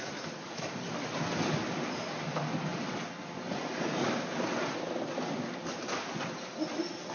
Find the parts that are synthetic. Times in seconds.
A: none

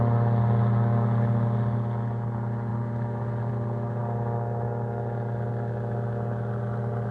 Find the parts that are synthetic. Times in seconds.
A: none